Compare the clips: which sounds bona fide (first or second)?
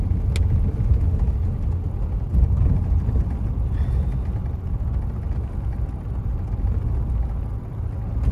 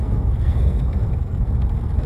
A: first